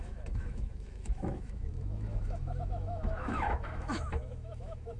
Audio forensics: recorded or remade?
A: remade